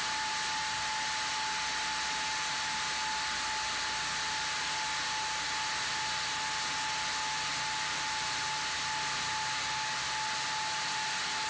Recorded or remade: recorded